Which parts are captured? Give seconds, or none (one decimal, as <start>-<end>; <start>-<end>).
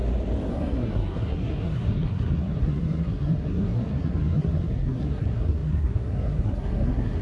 0.0-0.5